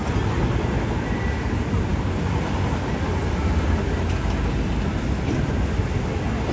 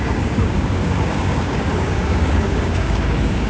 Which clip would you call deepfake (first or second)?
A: second